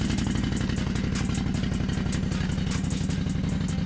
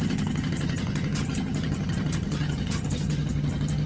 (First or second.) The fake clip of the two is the second